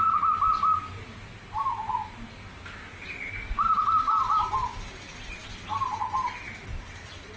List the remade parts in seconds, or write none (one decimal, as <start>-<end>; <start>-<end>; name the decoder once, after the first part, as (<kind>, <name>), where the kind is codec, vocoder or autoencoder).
none